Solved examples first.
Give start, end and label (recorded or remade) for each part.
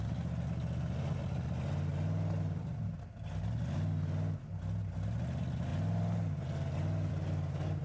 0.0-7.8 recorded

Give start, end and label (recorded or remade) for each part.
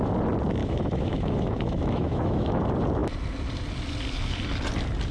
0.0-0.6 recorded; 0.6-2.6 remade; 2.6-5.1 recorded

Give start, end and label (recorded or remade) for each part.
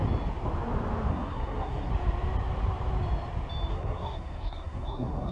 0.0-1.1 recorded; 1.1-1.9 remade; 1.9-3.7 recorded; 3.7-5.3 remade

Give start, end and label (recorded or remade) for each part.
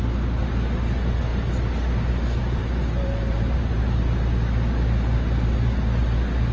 0.0-2.6 recorded; 2.6-3.8 remade; 3.8-6.5 recorded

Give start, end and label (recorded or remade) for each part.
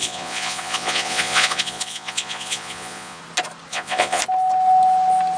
0.0-3.2 remade; 3.2-3.7 recorded; 3.7-4.2 remade; 4.2-5.4 recorded